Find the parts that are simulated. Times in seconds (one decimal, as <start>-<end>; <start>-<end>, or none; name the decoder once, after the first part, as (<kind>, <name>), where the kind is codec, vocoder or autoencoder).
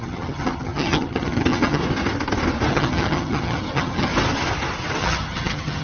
0.0-1.8 (vocoder, HiFi-GAN); 2.7-4.1; 5.0-5.8